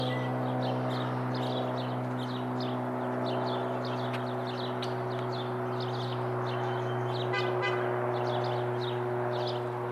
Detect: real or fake real